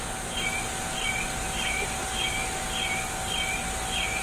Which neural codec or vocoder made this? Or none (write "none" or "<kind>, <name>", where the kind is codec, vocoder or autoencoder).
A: none